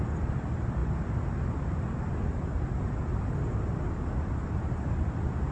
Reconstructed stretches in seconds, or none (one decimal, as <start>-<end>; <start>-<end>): none